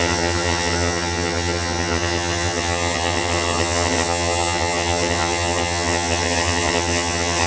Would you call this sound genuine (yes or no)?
no